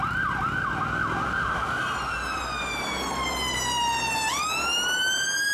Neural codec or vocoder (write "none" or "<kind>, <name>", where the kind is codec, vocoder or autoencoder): none